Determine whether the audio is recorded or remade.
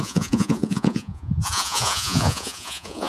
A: remade